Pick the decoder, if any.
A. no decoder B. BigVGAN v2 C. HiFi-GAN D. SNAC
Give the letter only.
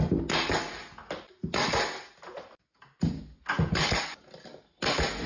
A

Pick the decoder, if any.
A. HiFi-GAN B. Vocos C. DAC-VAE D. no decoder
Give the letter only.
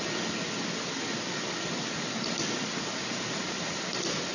D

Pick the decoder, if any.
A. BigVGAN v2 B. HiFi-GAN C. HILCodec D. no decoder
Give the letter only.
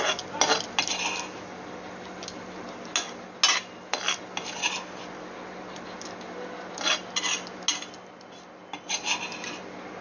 D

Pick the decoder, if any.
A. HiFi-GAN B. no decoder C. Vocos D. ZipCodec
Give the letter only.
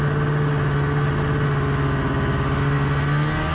B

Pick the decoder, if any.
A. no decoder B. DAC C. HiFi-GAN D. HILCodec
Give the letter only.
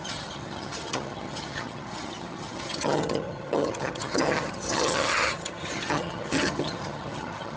C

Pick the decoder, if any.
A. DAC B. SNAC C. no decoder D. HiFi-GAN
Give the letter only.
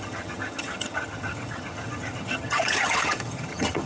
D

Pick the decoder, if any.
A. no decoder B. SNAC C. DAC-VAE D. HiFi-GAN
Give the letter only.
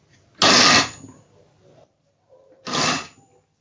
A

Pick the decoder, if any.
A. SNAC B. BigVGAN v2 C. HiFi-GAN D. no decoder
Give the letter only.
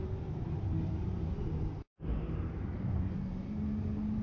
D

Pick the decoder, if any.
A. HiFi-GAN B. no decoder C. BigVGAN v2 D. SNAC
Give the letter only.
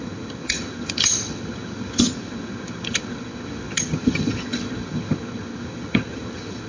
A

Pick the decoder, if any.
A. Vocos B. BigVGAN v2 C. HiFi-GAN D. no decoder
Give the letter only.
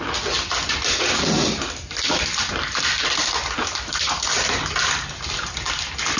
D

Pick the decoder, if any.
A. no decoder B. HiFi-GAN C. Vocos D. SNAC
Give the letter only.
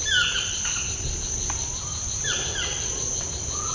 A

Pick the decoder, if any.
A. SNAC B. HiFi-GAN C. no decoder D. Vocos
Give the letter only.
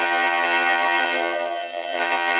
B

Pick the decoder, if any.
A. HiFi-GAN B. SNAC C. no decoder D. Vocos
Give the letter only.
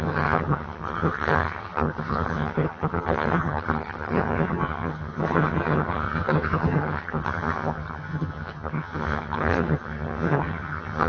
A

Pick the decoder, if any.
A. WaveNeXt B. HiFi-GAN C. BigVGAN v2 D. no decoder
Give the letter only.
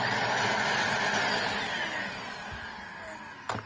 D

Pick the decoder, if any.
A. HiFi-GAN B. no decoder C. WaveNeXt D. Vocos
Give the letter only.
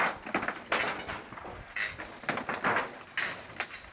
B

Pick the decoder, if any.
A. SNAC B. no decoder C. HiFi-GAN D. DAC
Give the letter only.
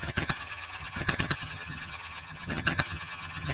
C